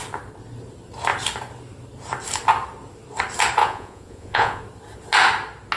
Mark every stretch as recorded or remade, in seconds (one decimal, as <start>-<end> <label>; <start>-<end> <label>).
0.0-3.6 recorded; 3.6-4.6 remade; 4.6-5.8 recorded